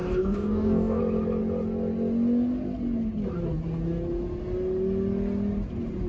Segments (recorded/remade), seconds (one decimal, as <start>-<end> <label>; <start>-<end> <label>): 0.0-1.0 remade; 1.0-6.1 recorded